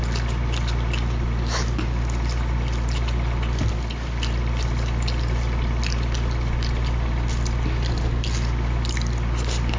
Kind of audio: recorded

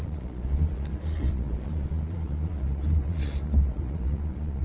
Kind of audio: remade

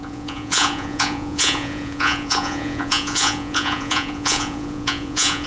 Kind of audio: remade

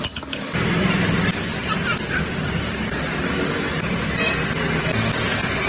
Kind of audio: recorded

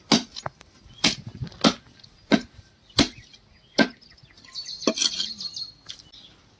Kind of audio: recorded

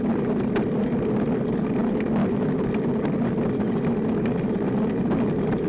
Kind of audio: recorded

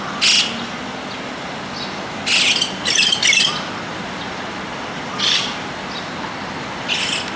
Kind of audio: recorded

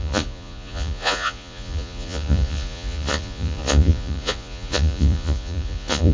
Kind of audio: remade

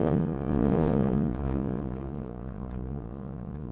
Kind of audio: remade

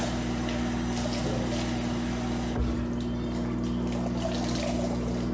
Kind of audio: recorded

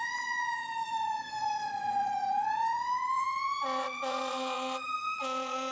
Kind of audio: remade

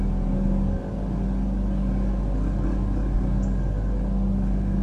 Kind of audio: recorded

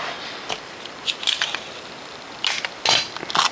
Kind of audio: recorded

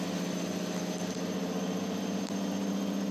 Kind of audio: recorded